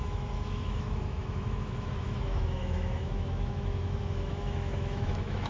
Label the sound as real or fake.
fake